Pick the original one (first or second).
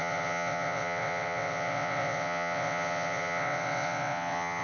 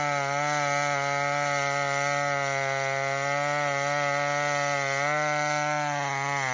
second